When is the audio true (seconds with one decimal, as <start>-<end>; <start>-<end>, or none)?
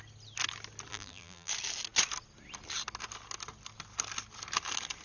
0.0-0.9; 1.5-5.0